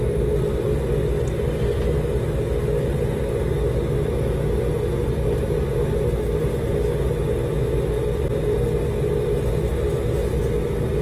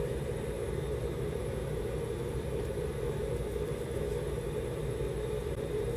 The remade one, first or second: second